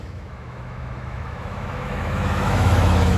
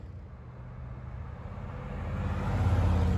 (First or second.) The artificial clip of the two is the first